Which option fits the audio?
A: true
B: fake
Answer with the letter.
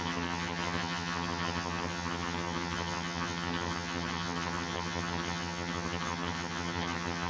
B